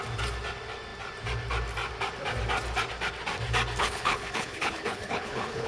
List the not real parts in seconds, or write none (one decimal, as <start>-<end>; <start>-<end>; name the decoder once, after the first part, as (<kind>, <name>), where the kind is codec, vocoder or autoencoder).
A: 3.8-5.7 (codec, HILCodec)